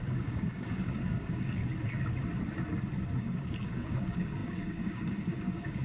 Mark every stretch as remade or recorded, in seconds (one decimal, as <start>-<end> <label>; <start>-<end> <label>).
0.0-1.6 remade; 1.6-3.2 recorded; 3.2-5.8 remade